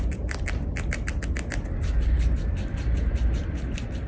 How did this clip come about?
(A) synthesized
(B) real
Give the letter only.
B